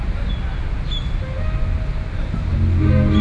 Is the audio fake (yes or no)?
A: no